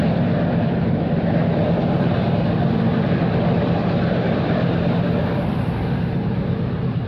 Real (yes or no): yes